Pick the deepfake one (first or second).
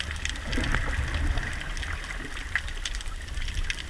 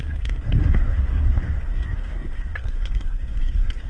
second